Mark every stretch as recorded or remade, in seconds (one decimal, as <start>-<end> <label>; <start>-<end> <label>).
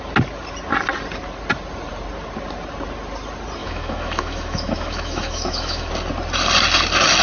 0.0-3.6 recorded; 3.6-5.9 remade; 5.9-7.2 recorded